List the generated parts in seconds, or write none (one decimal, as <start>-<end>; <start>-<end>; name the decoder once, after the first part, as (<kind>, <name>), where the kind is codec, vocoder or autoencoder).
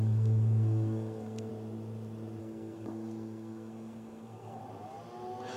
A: 0.0-1.5 (codec, SNAC); 2.4-4.6